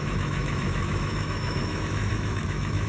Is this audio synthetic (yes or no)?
yes